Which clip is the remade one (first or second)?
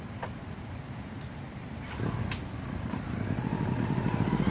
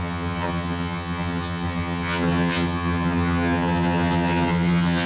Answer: second